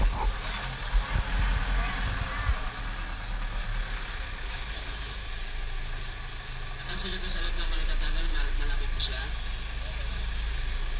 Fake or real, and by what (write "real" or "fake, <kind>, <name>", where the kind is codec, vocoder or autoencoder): real